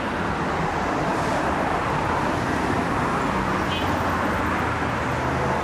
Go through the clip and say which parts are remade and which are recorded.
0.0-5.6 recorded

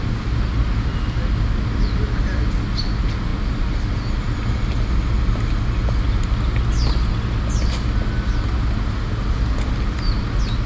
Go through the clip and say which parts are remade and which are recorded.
0.0-10.7 recorded

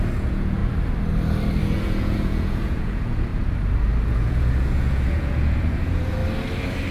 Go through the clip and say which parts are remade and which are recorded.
0.0-0.6 remade; 0.6-1.6 recorded; 1.6-3.3 remade; 3.3-4.1 recorded; 4.1-6.2 remade; 6.2-6.9 recorded

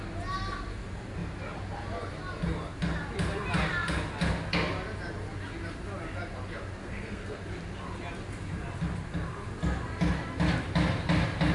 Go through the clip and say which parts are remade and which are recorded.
0.0-6.8 recorded; 6.8-7.4 remade; 7.4-11.5 recorded

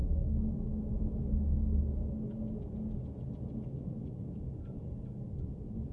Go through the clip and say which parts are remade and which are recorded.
0.0-1.8 remade; 1.8-5.9 recorded